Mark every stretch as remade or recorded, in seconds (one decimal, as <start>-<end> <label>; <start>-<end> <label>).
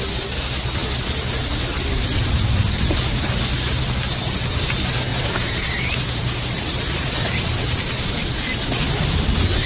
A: 0.0-5.1 recorded; 5.1-7.8 remade; 7.8-9.7 recorded